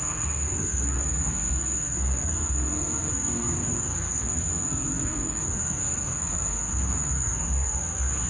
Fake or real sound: fake